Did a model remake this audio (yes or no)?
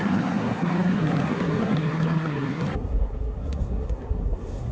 yes